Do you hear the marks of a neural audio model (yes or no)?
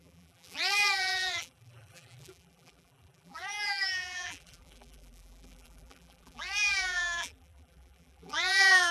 yes